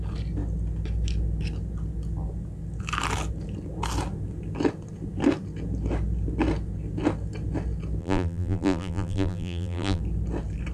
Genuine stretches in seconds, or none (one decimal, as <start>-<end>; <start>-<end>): 0.0-8.0; 10.0-10.7